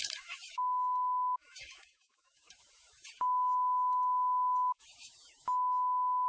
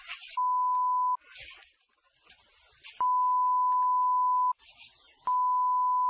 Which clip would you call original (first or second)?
second